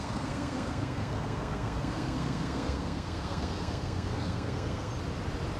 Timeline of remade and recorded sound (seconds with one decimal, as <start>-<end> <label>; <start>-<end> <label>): 0.0-4.9 remade; 4.9-5.6 recorded